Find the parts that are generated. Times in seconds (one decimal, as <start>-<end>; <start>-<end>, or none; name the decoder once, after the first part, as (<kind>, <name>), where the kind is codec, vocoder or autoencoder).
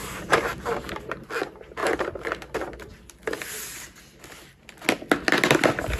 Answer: 0.0-1.3 (vocoder, BigVGAN v2); 1.8-2.9